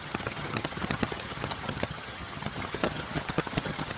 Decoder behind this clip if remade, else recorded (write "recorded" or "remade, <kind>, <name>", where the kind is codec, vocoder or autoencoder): remade, vocoder, HiFi-GAN